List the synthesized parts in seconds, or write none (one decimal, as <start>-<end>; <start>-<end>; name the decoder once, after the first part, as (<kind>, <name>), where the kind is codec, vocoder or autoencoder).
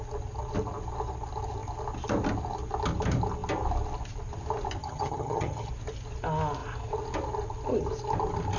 4.8-5.7 (vocoder, HiFi-GAN)